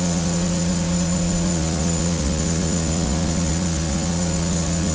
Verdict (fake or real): fake